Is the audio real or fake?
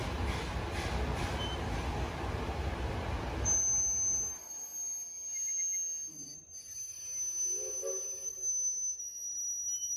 real